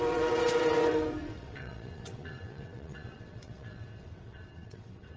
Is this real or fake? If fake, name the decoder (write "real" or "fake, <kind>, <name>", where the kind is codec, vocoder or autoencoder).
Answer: fake, vocoder, WaveNeXt